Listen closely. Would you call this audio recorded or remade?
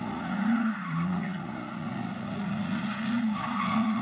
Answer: remade